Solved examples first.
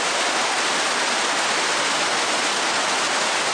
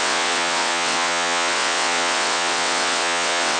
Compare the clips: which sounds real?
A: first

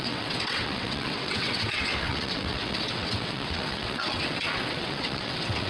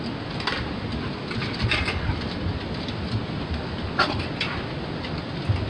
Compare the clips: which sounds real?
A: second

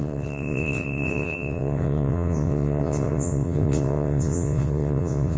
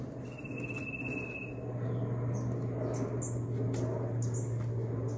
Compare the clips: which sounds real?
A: second